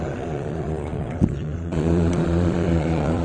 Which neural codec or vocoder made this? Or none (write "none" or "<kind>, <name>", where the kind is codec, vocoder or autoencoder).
vocoder, Vocos